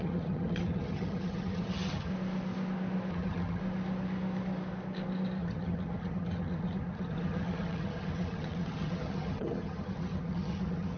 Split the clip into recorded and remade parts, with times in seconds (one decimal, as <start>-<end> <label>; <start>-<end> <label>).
0.0-2.1 remade; 2.1-3.1 recorded; 3.1-3.6 remade; 3.6-5.4 recorded; 5.4-11.0 remade